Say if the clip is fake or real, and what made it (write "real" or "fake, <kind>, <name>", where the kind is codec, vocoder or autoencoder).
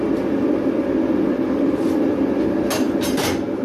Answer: real